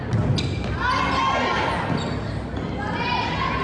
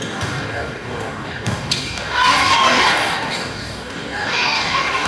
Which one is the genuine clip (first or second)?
first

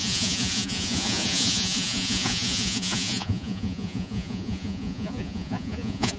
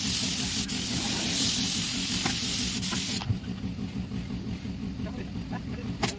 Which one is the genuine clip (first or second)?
second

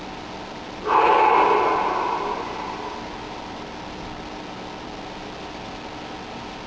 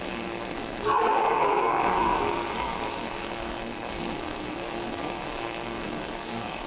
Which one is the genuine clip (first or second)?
first